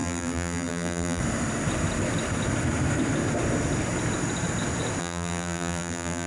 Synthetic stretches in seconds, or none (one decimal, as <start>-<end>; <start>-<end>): 0.0-1.2; 5.0-6.3